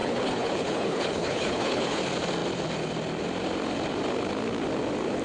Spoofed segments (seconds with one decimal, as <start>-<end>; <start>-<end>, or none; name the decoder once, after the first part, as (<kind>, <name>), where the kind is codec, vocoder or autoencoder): 0.0-2.0 (codec, HILCodec)